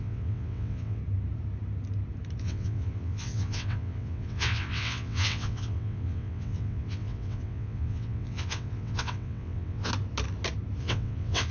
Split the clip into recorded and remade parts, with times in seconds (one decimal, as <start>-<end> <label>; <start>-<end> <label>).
0.0-1.0 remade; 1.0-2.4 recorded; 2.4-9.9 remade; 9.9-10.8 recorded; 10.8-11.5 remade